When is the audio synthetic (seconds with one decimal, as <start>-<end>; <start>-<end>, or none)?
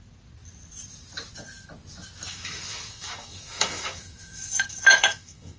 2.3-5.6